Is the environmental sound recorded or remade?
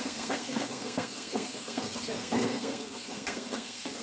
remade